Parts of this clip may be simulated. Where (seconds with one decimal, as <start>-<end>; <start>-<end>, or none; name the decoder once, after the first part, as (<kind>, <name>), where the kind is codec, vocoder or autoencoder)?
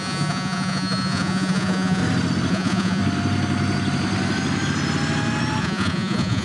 0.0-2.0 (vocoder, Vocos); 2.5-3.0; 5.6-6.4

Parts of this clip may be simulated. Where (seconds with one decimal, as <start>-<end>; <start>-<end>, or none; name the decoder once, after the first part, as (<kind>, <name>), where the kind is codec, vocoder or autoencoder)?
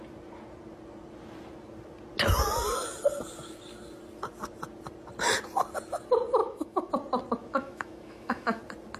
6.4-6.9 (autoencoder, DAC-VAE); 7.4-8.6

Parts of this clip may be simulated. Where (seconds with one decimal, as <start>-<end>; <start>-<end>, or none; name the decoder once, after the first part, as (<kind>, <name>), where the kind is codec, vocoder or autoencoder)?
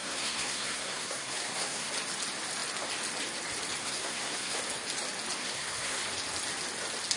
0.0-1.9 (codec, SNAC); 3.8-4.6; 5.4-6.0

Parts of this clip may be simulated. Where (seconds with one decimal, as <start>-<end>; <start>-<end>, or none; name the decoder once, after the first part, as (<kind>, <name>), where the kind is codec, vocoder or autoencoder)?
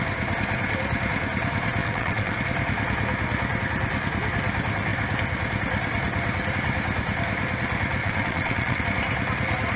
1.8-2.4 (vocoder, WaveNeXt); 8.0-8.8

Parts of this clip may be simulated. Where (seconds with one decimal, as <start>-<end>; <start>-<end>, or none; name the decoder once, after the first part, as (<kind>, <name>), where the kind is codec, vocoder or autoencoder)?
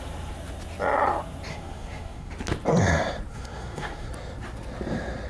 1.5-2.3 (codec, SNAC); 3.3-4.1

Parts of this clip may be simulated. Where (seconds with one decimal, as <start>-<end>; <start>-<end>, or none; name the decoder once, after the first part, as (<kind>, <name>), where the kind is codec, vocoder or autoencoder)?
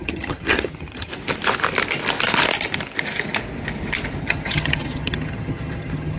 0.0-1.1 (vocoder, HiFi-GAN); 4.2-6.2